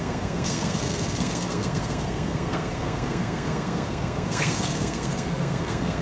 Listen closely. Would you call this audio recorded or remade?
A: remade